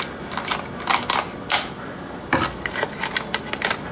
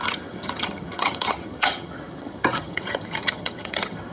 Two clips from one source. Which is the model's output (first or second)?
second